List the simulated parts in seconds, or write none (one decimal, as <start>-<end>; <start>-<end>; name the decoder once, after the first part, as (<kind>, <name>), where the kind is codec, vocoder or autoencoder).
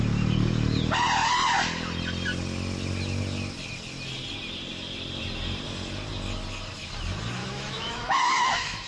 7.4-8.9 (autoencoder, DAC-VAE)